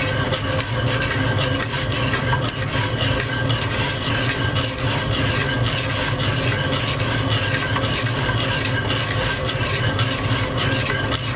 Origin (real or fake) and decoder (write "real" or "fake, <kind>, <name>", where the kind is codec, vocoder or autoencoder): real